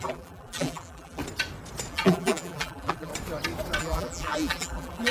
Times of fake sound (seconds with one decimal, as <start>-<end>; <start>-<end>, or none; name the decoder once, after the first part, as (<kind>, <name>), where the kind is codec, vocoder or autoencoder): 0.0-1.2 (vocoder, BigVGAN v2); 1.9-3.1; 3.8-5.1